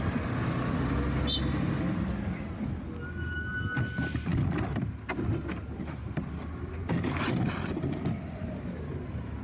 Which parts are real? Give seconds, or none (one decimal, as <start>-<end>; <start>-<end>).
0.0-9.4